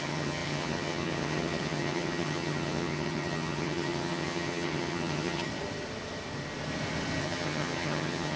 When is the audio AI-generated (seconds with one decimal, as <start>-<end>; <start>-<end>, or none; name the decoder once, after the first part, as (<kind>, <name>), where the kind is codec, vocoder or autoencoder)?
0.0-5.5 (vocoder, HiFi-GAN); 7.2-8.4